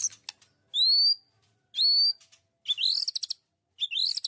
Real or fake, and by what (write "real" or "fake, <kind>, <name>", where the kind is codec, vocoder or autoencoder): real